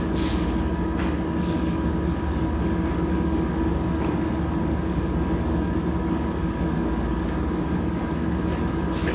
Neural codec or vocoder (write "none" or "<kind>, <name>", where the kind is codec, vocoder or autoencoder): codec, DAC